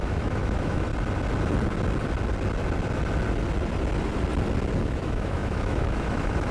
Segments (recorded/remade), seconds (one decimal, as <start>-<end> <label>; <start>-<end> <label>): 0.0-0.9 remade; 0.9-4.8 recorded; 4.8-6.5 remade